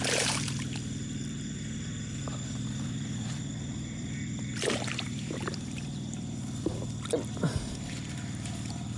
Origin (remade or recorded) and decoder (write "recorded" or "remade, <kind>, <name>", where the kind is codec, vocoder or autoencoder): remade, vocoder, BigVGAN v2